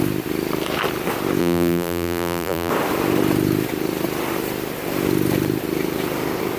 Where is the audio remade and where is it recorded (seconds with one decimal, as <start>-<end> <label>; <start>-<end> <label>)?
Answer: 0.0-1.4 recorded; 1.4-2.7 remade; 2.7-6.6 recorded